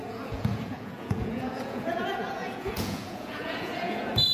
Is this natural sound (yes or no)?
no